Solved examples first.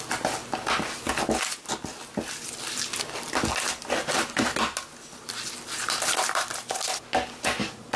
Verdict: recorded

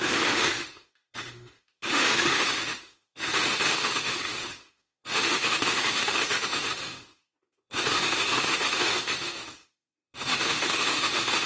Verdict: remade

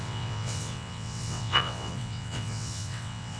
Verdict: remade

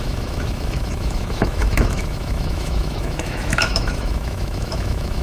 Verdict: remade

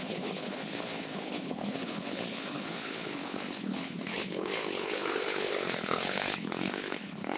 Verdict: remade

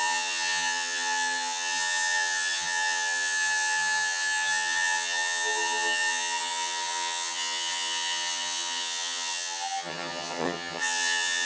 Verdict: remade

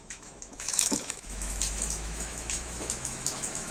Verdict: remade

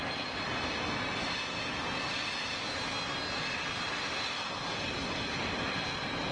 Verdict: recorded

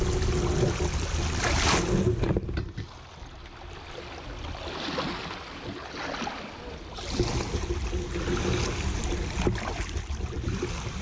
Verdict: recorded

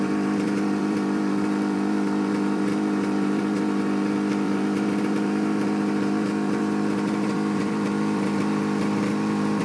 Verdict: remade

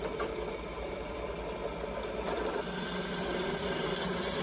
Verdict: recorded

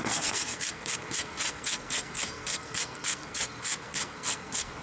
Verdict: remade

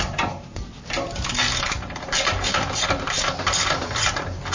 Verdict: remade